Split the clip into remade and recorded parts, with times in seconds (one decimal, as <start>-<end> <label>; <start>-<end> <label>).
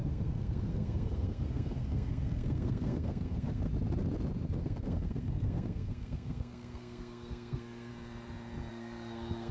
0.0-3.7 remade; 3.7-4.6 recorded; 4.6-7.9 remade; 7.9-8.7 recorded; 8.7-9.5 remade